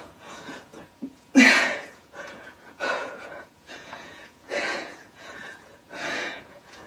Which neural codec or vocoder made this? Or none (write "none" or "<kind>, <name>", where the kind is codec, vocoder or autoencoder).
vocoder, Vocos